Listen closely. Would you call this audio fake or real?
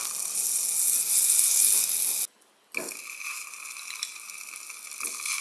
real